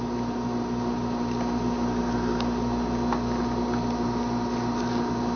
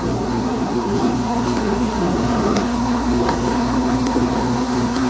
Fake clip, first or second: second